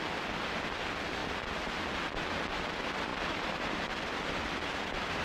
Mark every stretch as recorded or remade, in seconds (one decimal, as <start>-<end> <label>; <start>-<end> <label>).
0.0-5.2 recorded